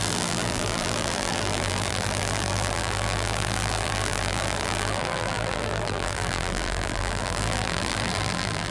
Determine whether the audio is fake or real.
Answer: fake